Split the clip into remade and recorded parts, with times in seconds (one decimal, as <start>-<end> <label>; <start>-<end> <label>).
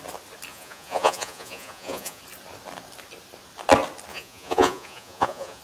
0.0-0.5 recorded; 0.5-2.2 remade; 2.2-4.1 recorded; 4.1-5.6 remade